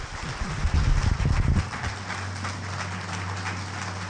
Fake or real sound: real